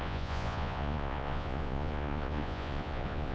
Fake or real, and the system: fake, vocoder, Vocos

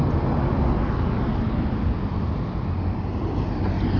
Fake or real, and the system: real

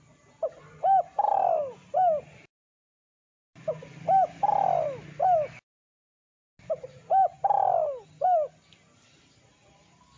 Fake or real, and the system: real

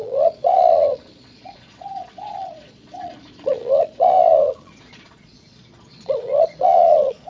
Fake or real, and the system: fake, vocoder, Vocos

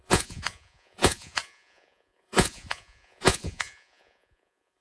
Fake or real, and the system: fake, vocoder, Vocos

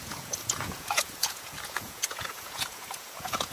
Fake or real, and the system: fake, vocoder, Vocos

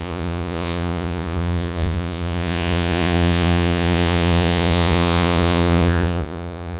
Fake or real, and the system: fake, vocoder, Vocos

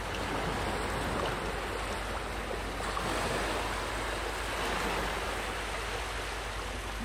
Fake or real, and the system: real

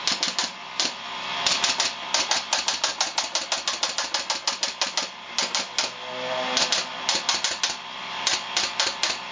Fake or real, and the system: real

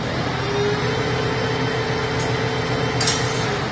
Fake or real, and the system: real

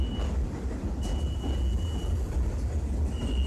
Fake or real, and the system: real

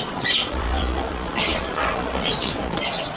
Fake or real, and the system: fake, vocoder, Vocos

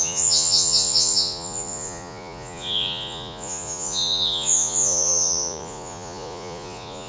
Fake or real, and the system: fake, vocoder, Vocos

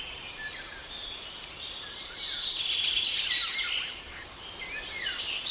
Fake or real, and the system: real